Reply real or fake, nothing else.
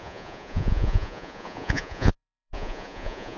fake